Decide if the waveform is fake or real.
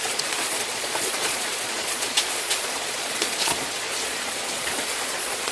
fake